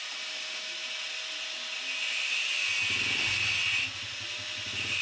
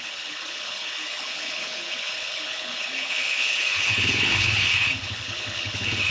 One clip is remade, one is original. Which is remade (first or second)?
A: second